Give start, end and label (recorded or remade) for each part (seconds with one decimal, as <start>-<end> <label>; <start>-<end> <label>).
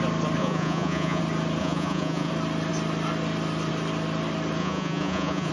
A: 0.0-0.4 recorded; 0.4-1.2 remade; 1.2-1.6 recorded; 1.6-2.3 remade; 2.3-4.6 recorded; 4.6-5.5 remade